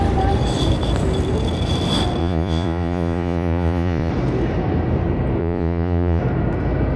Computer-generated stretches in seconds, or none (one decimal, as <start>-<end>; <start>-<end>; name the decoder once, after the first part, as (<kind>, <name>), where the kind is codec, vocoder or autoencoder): 2.2-4.1 (vocoder, Vocos); 5.4-6.2